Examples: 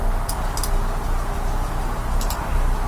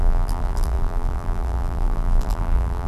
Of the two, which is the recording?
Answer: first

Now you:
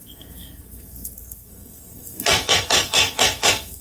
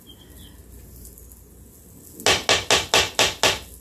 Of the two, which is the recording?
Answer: second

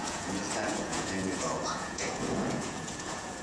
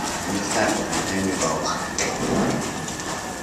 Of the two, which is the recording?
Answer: second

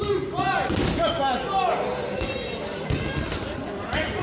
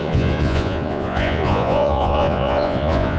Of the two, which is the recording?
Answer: first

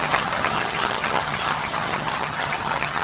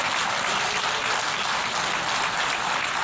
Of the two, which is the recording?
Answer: second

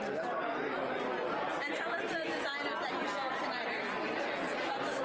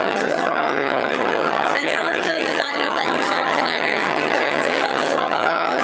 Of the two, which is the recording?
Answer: first